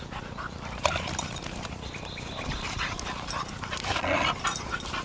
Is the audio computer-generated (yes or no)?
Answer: no